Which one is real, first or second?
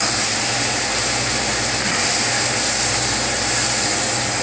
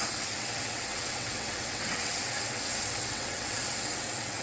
first